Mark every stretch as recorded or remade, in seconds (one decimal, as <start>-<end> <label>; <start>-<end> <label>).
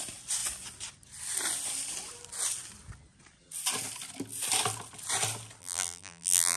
0.0-5.6 recorded; 5.6-6.6 remade